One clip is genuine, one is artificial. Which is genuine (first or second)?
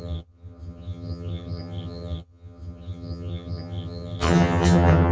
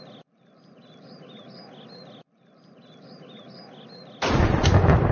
second